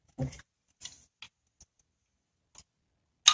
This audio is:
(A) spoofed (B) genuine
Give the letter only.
B